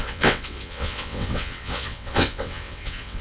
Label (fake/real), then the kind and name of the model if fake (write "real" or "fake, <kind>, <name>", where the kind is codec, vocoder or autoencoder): fake, vocoder, WaveNeXt